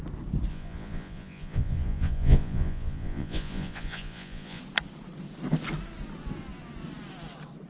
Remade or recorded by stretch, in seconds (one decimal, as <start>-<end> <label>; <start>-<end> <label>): 0.0-0.5 recorded; 0.5-4.6 remade; 4.6-7.7 recorded